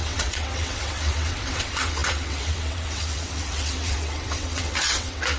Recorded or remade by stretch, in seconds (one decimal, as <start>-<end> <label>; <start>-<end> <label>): 0.0-5.4 remade